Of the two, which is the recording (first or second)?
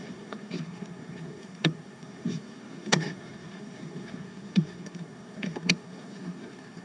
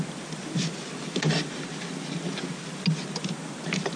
second